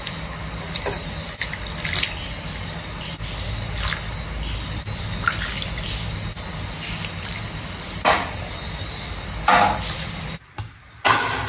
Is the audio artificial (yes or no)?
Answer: no